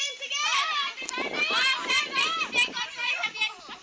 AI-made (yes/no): yes